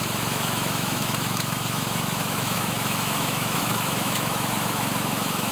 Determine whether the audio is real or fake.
fake